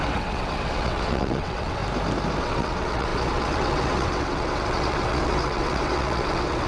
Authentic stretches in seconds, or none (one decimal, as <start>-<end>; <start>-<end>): 1.8-2.4